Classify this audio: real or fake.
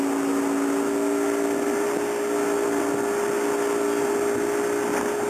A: real